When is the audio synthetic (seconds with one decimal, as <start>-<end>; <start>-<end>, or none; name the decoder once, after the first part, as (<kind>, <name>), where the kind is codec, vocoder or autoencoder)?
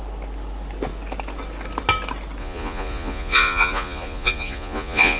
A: 2.4-5.2 (vocoder, Vocos)